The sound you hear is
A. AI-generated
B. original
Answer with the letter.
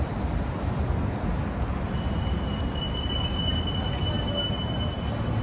B